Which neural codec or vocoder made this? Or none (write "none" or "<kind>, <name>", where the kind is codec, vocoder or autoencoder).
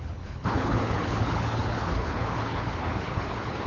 codec, HILCodec